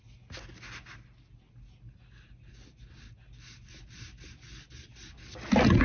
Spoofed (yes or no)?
no